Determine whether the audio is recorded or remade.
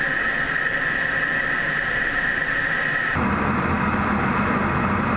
recorded